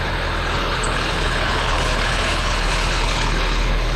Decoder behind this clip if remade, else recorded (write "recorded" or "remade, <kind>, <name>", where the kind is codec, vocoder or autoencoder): remade, codec, HILCodec